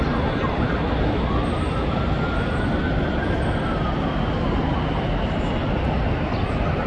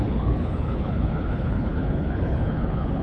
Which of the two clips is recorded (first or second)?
first